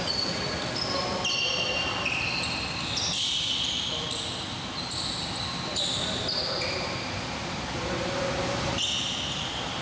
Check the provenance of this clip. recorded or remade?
recorded